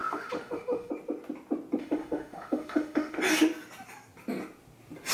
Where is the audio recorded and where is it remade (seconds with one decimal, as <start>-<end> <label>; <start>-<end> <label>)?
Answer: 0.0-0.9 remade; 0.9-1.8 recorded; 1.8-3.2 remade; 3.2-5.1 recorded